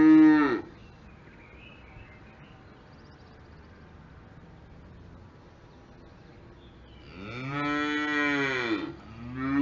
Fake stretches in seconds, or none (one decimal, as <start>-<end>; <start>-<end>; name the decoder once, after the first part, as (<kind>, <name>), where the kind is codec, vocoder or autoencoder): none